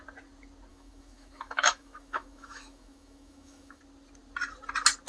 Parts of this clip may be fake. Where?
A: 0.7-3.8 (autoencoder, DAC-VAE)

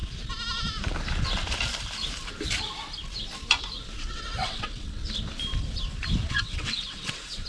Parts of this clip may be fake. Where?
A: 4.0-5.0 (vocoder, WaveNeXt); 6.3-7.5